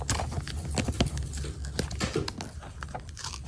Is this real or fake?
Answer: real